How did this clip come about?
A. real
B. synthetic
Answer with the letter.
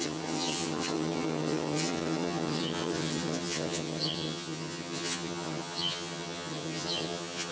B